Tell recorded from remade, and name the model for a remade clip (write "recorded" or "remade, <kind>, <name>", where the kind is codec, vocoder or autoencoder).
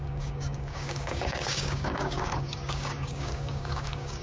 remade, codec, DAC